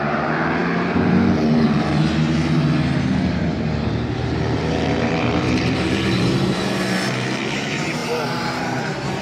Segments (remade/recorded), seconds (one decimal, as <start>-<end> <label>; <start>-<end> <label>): 0.0-1.9 remade; 1.9-3.4 recorded; 3.4-9.2 remade